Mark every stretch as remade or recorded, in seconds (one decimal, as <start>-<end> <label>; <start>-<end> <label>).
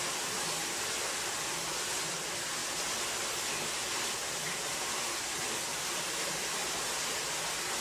0.0-6.6 remade; 6.6-7.8 recorded